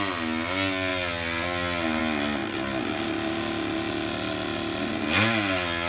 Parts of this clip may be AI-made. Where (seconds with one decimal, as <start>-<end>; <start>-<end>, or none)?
none